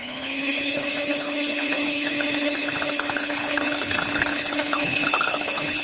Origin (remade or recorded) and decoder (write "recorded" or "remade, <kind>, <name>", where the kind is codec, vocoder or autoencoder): remade, codec, HILCodec